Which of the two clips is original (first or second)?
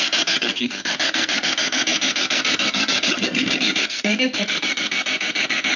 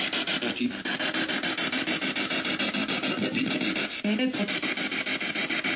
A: second